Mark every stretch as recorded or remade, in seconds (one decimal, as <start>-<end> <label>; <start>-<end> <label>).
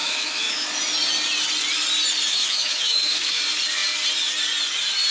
0.0-0.8 remade; 0.8-2.3 recorded; 2.3-3.4 remade; 3.4-5.1 recorded